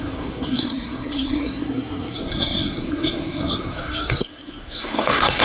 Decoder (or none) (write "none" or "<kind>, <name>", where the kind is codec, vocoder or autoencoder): codec, SNAC